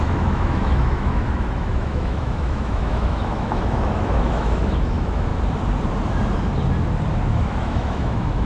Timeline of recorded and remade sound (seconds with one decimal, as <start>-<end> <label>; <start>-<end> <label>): 0.0-5.3 remade; 5.3-7.3 recorded; 7.3-8.5 remade